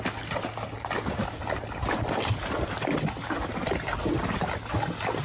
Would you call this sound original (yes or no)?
yes